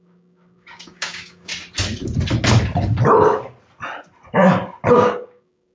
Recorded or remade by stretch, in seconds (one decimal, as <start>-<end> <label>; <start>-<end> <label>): 0.0-1.5 remade; 1.5-4.9 recorded; 4.9-5.7 remade